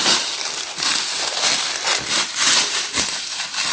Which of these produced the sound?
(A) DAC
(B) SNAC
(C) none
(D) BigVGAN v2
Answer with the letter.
C